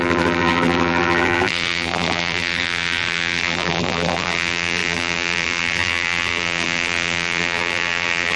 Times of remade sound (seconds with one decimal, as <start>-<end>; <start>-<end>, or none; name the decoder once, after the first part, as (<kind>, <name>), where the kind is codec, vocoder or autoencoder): 0.0-8.4 (vocoder, BigVGAN v2)